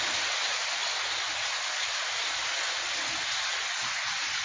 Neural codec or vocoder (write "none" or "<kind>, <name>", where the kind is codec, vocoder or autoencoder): none